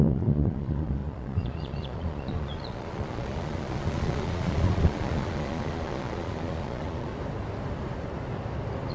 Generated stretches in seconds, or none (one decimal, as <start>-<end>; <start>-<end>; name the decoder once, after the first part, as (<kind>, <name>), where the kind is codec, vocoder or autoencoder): 0.0-7.1 (vocoder, Vocos)